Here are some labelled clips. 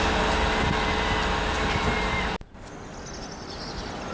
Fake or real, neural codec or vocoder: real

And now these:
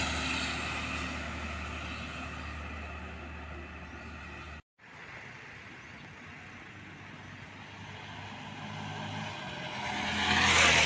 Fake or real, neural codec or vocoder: real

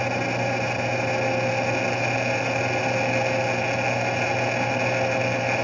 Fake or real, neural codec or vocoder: real